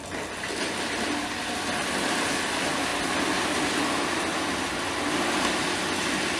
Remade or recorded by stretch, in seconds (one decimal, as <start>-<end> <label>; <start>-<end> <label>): 0.0-6.4 recorded